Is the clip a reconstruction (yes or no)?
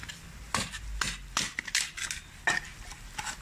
no